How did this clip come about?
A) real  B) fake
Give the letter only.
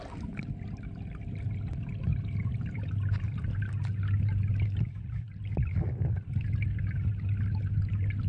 A